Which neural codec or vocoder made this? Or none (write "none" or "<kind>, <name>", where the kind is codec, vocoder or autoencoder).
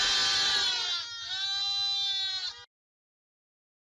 none